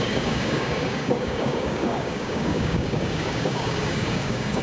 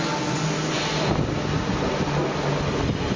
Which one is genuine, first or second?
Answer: second